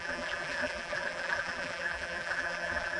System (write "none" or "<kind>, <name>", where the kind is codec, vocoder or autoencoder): vocoder, BigVGAN v2